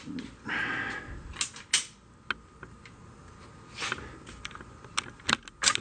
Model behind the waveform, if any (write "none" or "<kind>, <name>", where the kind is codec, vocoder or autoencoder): none